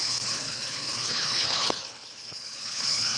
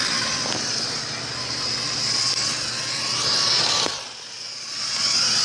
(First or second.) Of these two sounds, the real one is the second